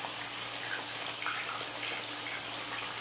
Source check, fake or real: real